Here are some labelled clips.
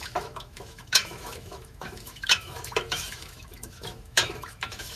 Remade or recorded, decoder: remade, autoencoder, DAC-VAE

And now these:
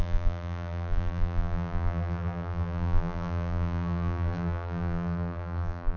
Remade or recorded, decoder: remade, vocoder, BigVGAN v2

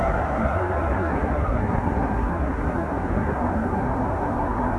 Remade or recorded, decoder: remade, codec, SNAC